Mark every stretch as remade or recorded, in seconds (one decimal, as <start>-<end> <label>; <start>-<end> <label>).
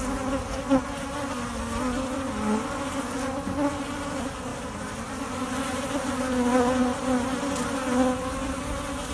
0.0-9.1 recorded